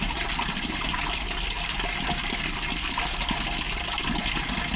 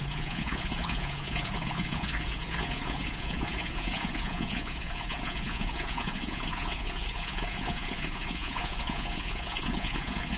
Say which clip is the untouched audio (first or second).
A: first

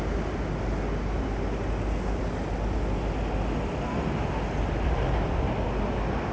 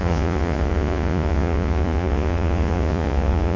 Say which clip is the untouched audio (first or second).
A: first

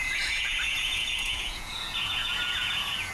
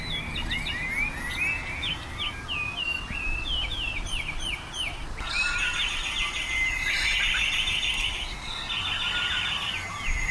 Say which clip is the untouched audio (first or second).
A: second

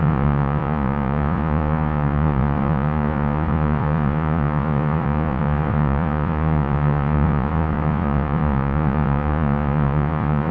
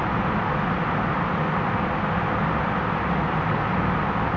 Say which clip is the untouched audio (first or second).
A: second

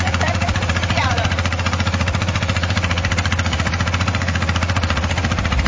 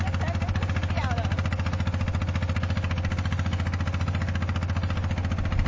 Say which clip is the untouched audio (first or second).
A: second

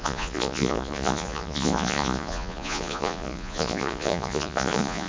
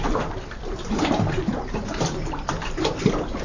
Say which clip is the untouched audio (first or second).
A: second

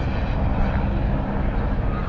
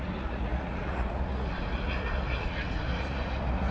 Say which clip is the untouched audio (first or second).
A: first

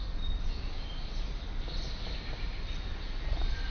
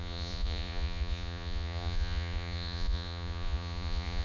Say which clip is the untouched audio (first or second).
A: first